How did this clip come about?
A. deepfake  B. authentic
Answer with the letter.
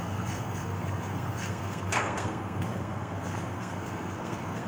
A